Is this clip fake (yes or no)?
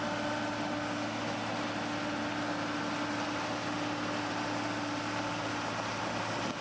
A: no